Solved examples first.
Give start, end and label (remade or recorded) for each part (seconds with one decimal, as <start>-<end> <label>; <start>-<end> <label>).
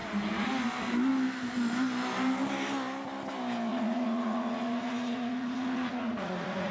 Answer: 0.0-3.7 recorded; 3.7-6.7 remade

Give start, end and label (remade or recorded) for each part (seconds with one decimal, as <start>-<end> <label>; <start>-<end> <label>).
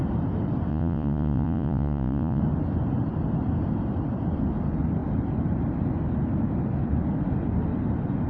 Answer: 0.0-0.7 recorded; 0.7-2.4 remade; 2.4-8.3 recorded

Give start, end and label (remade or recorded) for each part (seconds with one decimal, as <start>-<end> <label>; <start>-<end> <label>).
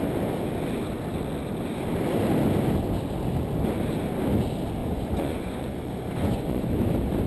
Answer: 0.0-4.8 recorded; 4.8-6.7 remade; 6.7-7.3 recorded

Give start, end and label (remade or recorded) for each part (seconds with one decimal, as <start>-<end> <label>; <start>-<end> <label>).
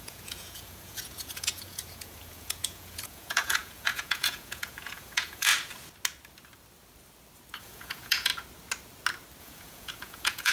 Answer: 0.0-5.5 remade; 5.5-7.6 recorded; 7.6-8.3 remade; 8.3-9.4 recorded; 9.4-10.5 remade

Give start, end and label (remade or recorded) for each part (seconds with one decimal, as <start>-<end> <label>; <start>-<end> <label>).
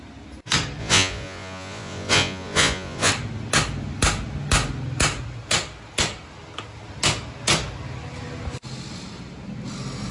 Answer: 0.0-0.8 recorded; 0.8-3.1 remade; 3.1-10.1 recorded